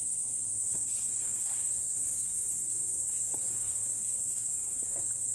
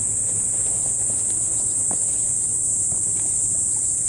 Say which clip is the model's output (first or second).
first